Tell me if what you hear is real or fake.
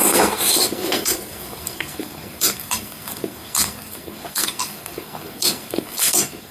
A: fake